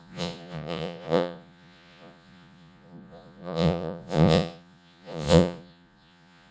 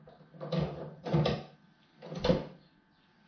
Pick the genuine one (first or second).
second